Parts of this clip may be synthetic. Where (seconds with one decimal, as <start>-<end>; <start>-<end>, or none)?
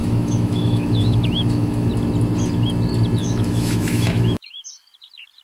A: 0.0-1.9; 3.2-4.5